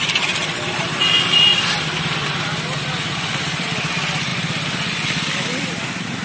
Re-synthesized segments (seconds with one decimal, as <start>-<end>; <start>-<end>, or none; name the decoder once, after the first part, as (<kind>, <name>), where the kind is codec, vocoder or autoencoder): none